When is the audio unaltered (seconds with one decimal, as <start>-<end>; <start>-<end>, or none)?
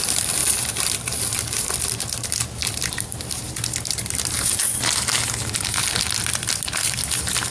0.0-2.6; 3.4-4.0; 4.7-7.5